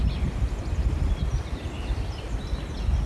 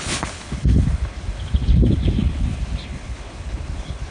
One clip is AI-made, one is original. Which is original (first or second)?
first